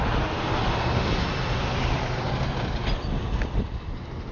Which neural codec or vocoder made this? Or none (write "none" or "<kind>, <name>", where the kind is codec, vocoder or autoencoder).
none